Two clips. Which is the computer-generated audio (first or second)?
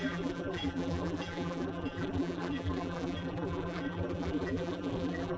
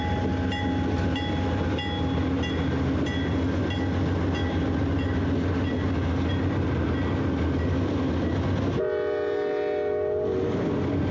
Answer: first